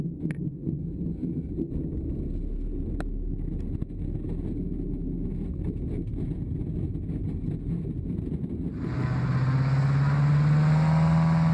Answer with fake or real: real